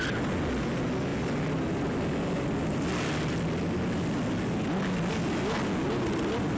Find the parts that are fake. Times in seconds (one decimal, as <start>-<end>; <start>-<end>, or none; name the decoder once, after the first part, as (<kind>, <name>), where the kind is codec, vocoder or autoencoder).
none